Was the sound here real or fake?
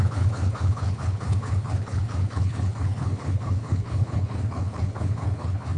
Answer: fake